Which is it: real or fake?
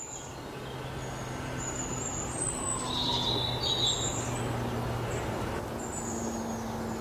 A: real